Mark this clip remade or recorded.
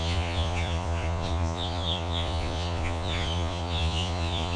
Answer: remade